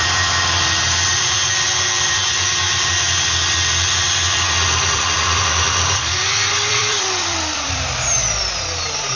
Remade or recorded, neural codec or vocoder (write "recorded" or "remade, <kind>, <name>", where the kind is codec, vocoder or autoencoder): remade, vocoder, BigVGAN v2